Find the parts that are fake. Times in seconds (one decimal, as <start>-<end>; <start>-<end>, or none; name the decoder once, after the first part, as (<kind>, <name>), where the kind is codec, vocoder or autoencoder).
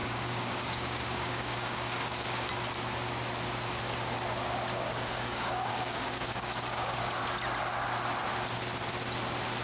0.0-2.5 (codec, DAC); 4.7-7.2